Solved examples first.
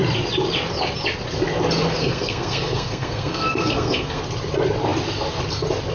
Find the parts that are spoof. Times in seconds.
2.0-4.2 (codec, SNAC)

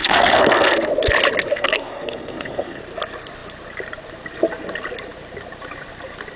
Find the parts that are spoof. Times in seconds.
0.0-0.9 (codec, SNAC); 1.5-2.8

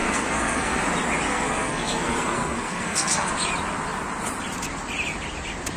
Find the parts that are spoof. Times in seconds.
0.0-0.8 (codec, SNAC); 1.3-3.3

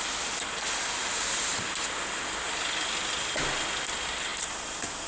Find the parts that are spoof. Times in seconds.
none